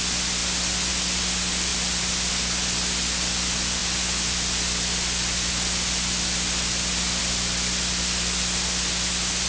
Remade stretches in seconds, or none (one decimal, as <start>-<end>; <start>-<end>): none